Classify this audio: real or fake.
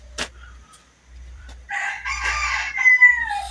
fake